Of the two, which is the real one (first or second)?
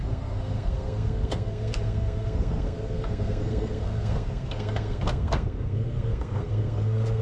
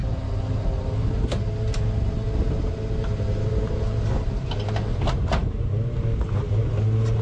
second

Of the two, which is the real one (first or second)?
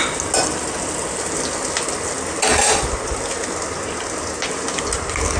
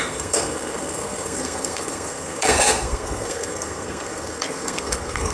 first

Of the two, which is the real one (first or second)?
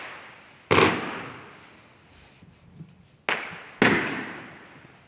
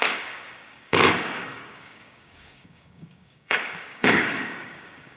first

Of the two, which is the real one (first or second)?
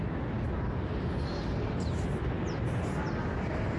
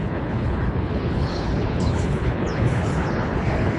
first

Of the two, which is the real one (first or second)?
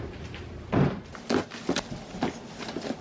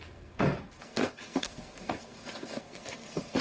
first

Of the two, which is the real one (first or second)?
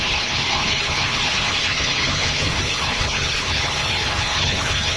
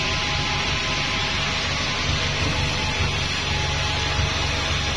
second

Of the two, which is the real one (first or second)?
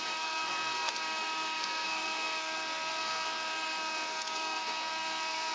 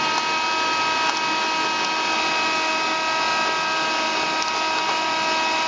second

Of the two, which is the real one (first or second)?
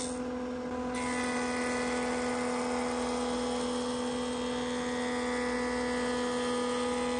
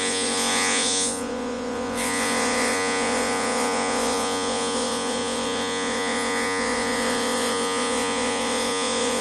first